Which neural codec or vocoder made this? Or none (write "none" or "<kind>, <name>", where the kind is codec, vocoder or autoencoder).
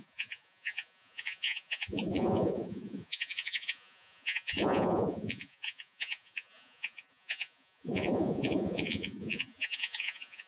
vocoder, Vocos